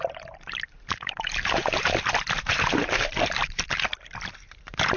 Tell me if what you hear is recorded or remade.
remade